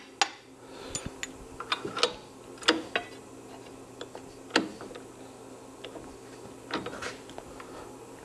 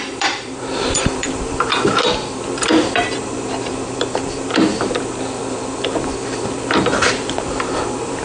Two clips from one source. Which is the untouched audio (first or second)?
first